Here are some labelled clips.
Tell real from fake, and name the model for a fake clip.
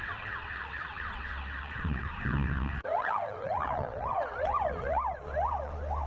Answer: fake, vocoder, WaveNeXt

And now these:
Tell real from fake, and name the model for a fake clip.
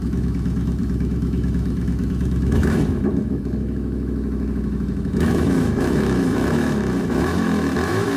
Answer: fake, autoencoder, DAC-VAE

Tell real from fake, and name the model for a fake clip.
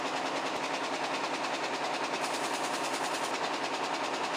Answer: real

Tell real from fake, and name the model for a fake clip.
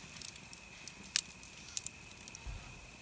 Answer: real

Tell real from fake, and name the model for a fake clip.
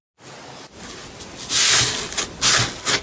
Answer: real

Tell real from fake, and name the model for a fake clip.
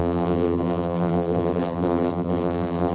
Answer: fake, vocoder, BigVGAN v2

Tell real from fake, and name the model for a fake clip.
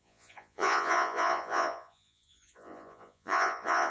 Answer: fake, vocoder, Vocos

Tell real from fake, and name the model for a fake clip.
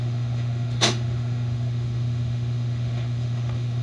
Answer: fake, autoencoder, DAC-VAE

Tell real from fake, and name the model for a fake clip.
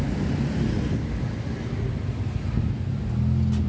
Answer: real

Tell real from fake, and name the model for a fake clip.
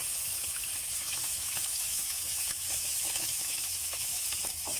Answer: fake, autoencoder, DAC-VAE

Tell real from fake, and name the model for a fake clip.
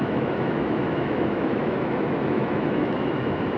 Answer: fake, autoencoder, DAC-VAE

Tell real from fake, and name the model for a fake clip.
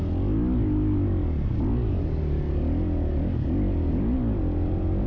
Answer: real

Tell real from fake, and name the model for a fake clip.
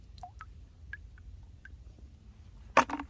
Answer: real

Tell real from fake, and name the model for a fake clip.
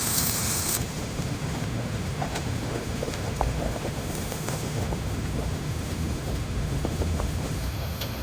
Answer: fake, autoencoder, DAC-VAE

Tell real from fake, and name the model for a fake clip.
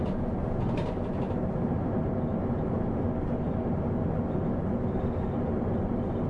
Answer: real